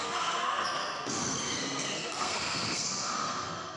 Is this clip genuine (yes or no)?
no